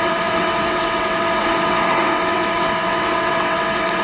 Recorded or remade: remade